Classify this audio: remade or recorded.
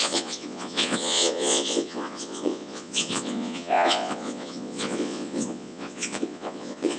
remade